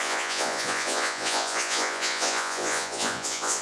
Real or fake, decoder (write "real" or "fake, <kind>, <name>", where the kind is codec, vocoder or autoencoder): fake, vocoder, Vocos